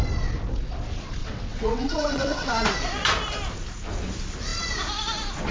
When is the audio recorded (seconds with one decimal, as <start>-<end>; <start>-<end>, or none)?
0.0-1.2; 2.5-5.5